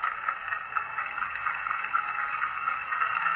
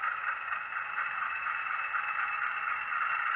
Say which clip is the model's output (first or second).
first